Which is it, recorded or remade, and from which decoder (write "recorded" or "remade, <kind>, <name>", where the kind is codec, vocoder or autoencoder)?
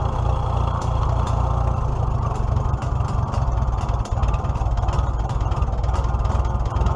recorded